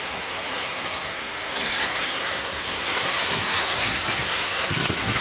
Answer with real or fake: fake